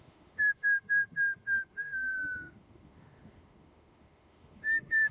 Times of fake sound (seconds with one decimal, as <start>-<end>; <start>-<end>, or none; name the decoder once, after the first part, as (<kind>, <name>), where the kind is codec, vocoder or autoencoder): 0.0-5.1 (autoencoder, DAC-VAE)